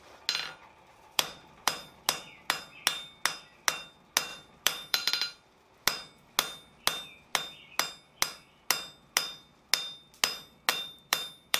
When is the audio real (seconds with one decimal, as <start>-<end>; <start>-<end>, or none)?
0.0-0.6; 2.0-4.3; 5.1-10.7